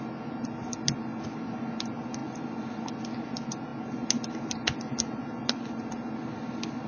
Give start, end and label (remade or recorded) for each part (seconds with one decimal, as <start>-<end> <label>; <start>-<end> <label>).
0.0-2.2 recorded; 2.2-2.8 remade; 2.8-6.9 recorded